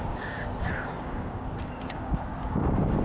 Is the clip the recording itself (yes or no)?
no